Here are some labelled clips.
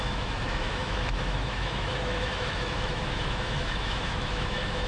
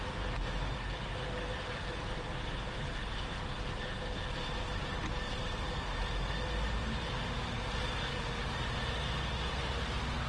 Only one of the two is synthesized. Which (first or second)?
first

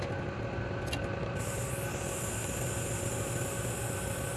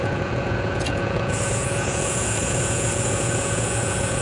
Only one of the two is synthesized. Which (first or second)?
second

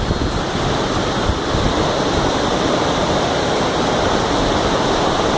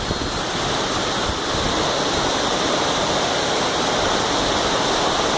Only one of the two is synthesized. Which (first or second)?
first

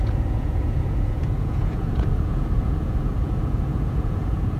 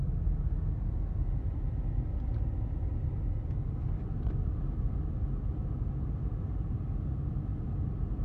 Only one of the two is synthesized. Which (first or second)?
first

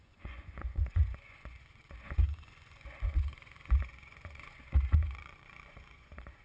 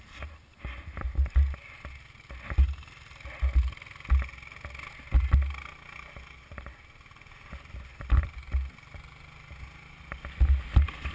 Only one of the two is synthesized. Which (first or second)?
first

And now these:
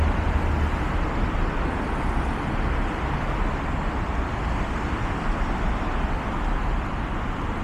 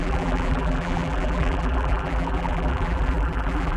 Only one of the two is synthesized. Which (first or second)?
second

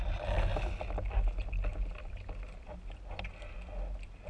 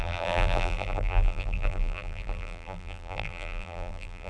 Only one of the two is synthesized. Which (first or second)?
second